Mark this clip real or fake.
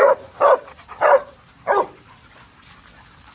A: real